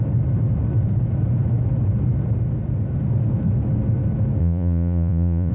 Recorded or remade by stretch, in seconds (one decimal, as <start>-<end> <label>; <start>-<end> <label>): 0.0-4.4 recorded; 4.4-5.5 remade